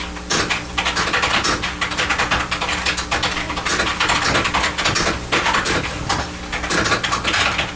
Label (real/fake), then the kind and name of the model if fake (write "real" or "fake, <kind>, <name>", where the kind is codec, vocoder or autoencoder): real